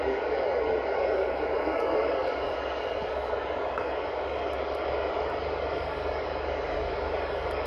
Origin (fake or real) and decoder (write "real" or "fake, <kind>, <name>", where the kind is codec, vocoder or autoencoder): fake, codec, DAC